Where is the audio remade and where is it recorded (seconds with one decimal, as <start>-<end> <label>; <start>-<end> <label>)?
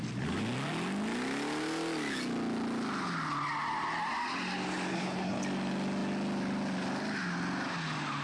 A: 0.0-4.9 recorded; 4.9-5.4 remade; 5.4-8.2 recorded